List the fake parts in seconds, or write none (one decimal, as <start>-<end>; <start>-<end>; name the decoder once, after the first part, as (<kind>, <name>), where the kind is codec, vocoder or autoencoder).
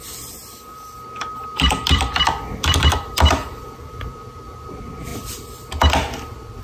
0.0-5.1 (vocoder, BigVGAN v2)